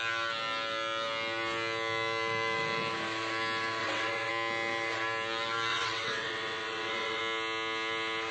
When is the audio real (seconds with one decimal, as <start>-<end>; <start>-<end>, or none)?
0.0-3.8; 4.3-5.7; 7.2-8.3